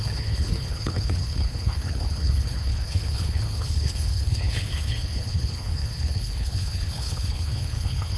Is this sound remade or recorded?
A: remade